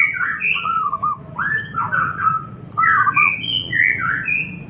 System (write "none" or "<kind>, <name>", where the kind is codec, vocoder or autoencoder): vocoder, Vocos